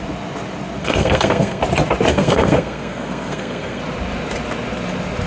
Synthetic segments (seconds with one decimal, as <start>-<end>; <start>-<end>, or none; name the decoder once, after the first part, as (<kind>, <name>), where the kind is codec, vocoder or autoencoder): 0.8-1.6 (codec, SNAC); 2.1-3.8